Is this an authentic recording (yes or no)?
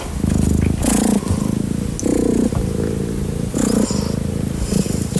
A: yes